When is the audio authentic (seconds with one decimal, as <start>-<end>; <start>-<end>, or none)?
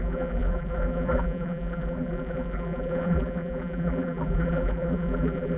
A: none